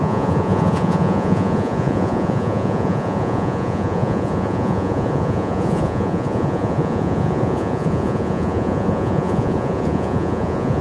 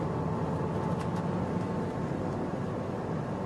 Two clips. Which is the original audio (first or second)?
second